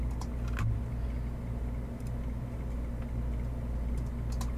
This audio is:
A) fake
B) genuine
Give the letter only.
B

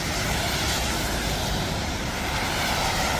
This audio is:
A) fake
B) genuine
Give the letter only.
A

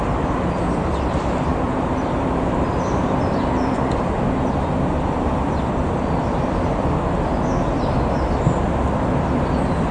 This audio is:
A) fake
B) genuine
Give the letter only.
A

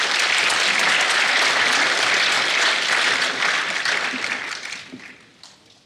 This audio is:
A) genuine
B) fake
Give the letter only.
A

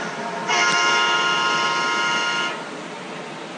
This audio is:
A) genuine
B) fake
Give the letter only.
A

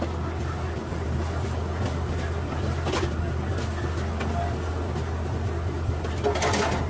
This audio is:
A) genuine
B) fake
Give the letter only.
A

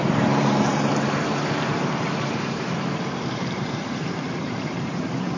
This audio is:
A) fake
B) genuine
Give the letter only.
A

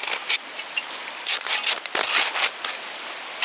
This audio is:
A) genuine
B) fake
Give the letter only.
A